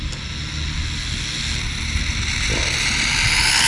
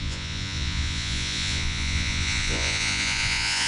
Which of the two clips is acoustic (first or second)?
first